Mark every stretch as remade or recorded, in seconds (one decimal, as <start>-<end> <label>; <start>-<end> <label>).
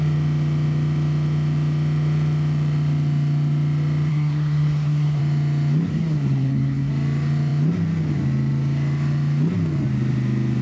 0.0-4.1 recorded; 4.1-5.2 remade; 5.2-5.9 recorded; 5.9-6.9 remade; 6.9-10.6 recorded